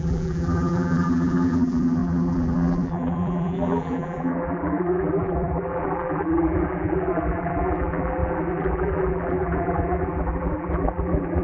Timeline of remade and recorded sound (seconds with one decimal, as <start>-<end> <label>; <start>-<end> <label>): 0.0-11.4 remade